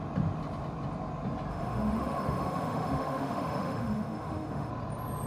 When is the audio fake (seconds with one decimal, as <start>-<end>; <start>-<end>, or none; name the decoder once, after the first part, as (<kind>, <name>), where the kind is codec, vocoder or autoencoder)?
1.5-4.7 (autoencoder, DAC-VAE)